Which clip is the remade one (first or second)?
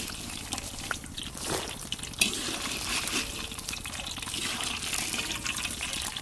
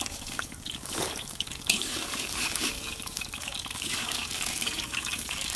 second